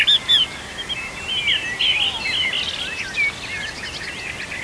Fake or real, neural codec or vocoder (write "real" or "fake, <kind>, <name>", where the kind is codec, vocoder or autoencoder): real